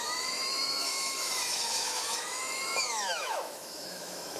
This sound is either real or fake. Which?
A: fake